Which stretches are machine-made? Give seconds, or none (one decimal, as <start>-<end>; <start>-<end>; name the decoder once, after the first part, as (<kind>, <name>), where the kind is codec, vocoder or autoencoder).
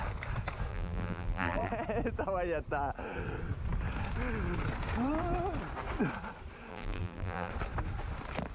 0.7-1.7 (vocoder, BigVGAN v2); 6.7-7.5